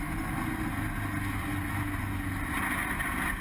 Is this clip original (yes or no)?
yes